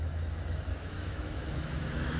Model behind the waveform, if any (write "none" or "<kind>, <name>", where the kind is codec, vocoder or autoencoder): autoencoder, DAC-VAE